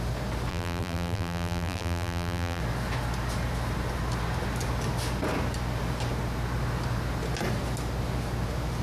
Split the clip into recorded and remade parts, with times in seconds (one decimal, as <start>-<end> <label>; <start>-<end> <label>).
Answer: 0.0-0.5 recorded; 0.5-2.6 remade; 2.6-8.8 recorded